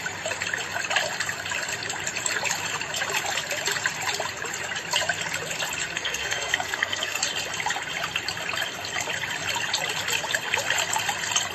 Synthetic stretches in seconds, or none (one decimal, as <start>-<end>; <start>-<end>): 5.8-7.2